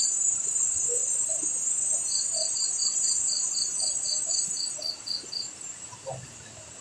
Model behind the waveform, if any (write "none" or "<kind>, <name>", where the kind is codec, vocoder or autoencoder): none